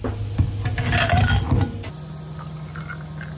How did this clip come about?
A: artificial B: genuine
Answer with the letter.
B